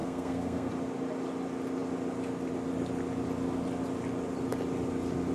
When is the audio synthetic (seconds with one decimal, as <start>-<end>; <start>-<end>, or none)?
0.0-0.7